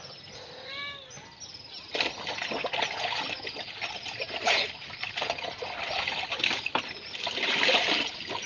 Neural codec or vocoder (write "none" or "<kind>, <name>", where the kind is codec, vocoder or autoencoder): none